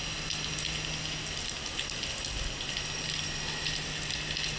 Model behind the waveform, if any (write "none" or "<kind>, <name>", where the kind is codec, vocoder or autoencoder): none